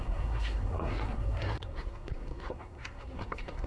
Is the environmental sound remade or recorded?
remade